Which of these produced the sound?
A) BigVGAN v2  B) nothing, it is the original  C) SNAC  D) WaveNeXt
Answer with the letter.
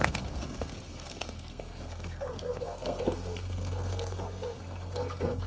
C